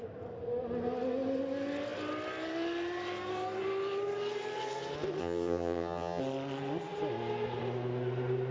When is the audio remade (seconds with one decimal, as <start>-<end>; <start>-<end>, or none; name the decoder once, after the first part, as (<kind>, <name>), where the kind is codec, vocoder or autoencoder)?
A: 5.2-6.2 (vocoder, HiFi-GAN)